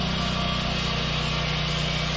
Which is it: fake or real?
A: real